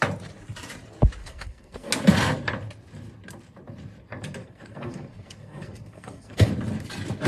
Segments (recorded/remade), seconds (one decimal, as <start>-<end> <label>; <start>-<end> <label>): 0.0-1.2 recorded; 1.2-1.9 remade; 1.9-4.4 recorded; 4.4-6.5 remade; 6.5-7.3 recorded